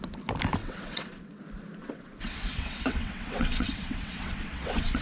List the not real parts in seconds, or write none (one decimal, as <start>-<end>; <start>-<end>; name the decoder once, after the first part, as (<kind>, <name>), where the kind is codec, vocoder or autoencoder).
0.6-1.4 (vocoder, WaveNeXt); 1.8-5.0